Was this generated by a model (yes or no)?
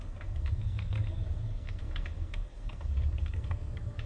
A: yes